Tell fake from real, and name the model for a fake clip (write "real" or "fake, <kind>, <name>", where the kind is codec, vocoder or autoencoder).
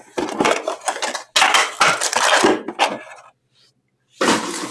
real